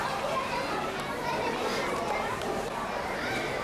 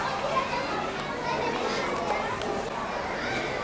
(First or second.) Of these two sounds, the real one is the second